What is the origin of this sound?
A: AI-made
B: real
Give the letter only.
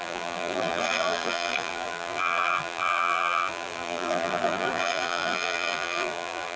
A